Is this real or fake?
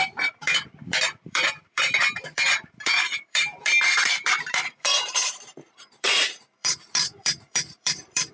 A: fake